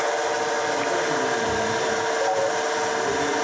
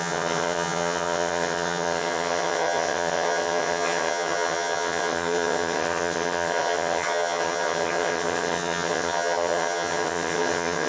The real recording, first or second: first